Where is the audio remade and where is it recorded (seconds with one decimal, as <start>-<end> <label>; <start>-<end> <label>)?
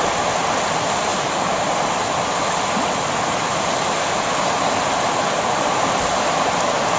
0.0-1.1 recorded; 1.1-1.7 remade; 1.7-7.0 recorded